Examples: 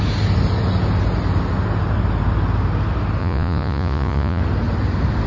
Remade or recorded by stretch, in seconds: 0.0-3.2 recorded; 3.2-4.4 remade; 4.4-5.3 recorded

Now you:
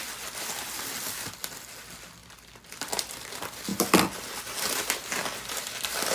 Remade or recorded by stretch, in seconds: 0.0-6.1 recorded

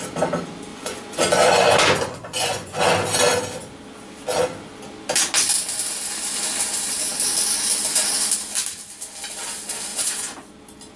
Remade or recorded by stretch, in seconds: 0.0-0.7 recorded; 0.7-2.8 remade; 2.8-9.9 recorded; 9.9-10.5 remade; 10.5-11.0 recorded

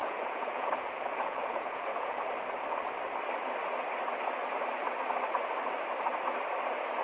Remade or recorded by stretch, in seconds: 0.0-2.2 remade; 2.2-7.0 recorded

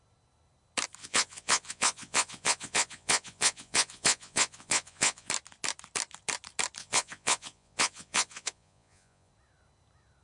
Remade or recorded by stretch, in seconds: 0.0-1.0 recorded; 1.0-5.3 remade; 5.3-6.8 recorded; 6.8-9.3 remade; 9.3-10.2 recorded

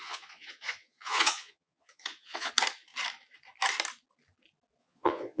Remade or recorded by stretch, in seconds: 0.0-2.5 remade; 2.5-4.8 recorded; 4.8-5.4 remade